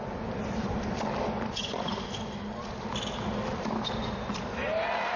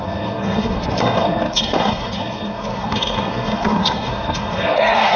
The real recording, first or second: first